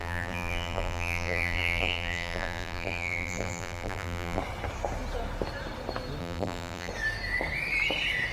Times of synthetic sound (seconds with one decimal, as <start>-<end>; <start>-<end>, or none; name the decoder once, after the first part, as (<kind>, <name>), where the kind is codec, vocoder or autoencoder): 0.0-4.4 (vocoder, BigVGAN v2); 6.2-6.9